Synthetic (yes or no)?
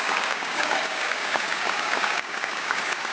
yes